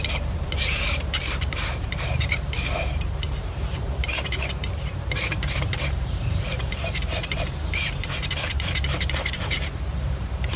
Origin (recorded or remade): remade